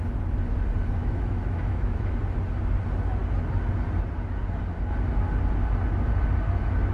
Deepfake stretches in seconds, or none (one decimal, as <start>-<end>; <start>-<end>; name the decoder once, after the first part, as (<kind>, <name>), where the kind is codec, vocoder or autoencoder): 1.0-2.1 (autoencoder, DAC-VAE)